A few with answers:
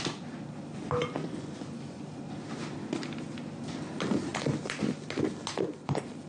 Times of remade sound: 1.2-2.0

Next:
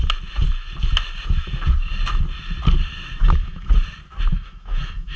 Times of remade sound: 3.2-3.7; 4.3-5.2